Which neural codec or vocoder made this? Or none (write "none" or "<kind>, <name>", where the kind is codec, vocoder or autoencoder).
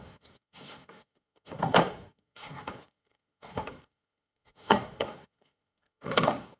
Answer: codec, SNAC